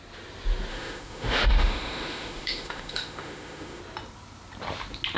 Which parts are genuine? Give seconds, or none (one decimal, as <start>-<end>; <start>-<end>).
0.0-0.7; 3.8-5.2